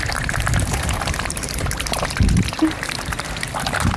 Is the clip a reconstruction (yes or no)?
yes